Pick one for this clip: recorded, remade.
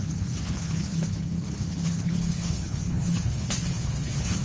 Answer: remade